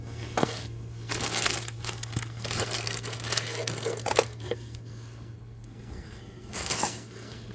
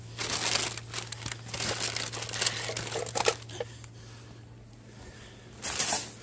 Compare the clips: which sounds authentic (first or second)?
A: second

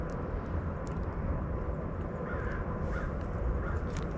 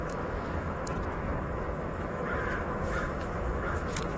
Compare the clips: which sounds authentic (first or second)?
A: first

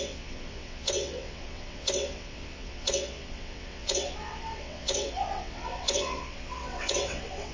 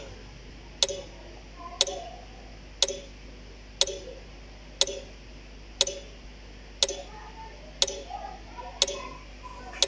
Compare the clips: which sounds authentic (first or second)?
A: second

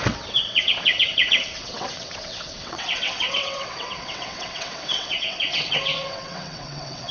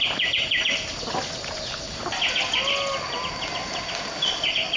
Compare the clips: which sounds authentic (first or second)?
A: second